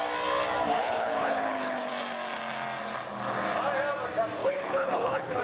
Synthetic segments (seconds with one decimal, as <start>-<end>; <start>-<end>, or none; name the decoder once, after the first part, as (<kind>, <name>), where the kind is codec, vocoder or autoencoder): 0.7-1.9 (codec, HILCodec); 4.4-5.4